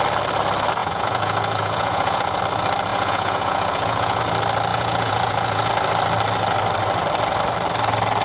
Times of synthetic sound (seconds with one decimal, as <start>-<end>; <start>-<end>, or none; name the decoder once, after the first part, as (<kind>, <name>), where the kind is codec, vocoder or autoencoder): 0.8-2.4 (vocoder, Vocos); 2.9-4.2; 4.7-5.7